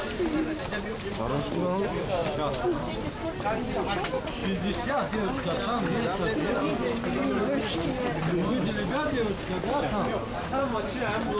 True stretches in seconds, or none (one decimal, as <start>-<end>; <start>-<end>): 0.0-11.4